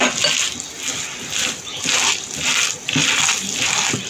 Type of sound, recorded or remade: recorded